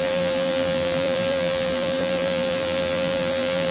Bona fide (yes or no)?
no